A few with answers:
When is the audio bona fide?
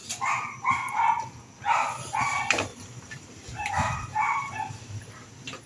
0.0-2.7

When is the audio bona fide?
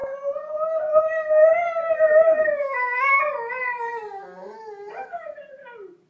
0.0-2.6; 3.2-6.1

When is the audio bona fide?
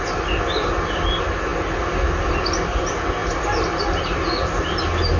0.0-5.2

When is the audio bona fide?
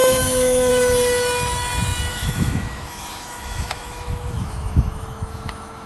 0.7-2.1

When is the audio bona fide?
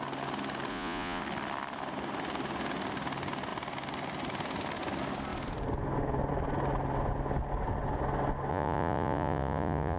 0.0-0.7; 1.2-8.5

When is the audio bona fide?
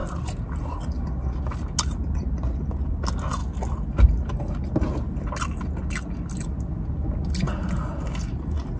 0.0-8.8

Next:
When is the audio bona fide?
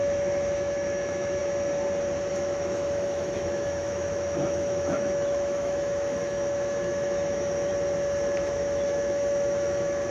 1.4-2.3; 7.7-8.4